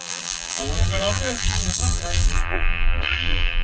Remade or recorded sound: remade